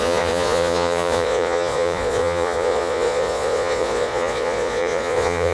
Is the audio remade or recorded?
remade